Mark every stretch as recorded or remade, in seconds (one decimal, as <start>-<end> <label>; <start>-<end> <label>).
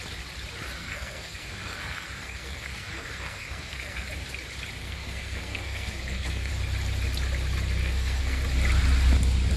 0.0-0.8 recorded; 0.8-4.1 remade; 4.1-4.8 recorded; 4.8-6.5 remade; 6.5-7.8 recorded; 7.8-8.4 remade; 8.4-9.6 recorded